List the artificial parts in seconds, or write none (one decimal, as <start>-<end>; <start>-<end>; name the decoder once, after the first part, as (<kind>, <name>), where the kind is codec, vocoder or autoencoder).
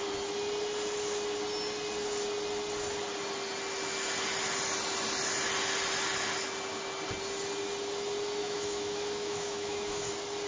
8.4-10.1 (autoencoder, DAC-VAE)